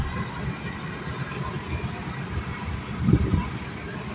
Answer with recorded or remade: recorded